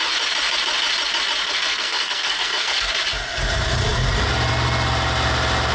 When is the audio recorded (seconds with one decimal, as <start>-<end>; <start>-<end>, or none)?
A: 0.0-1.4; 2.9-5.7